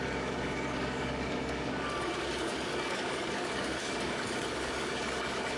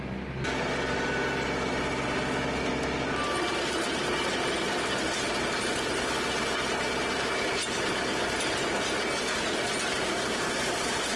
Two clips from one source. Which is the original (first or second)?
second